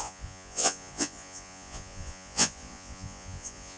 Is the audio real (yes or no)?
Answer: no